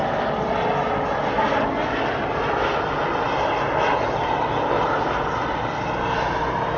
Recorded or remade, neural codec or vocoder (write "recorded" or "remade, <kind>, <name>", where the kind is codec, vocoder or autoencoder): recorded